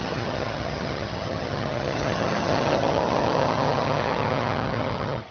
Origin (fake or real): fake